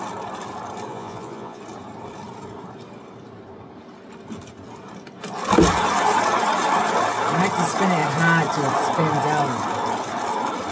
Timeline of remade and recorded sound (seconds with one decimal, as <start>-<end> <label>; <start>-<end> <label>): 0.0-0.9 recorded; 0.9-1.6 remade; 1.6-10.7 recorded